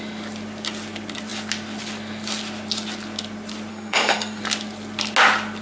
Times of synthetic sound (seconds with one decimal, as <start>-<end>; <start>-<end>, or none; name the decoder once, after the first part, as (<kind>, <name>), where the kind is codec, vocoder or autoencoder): 3.7-4.4 (codec, SNAC)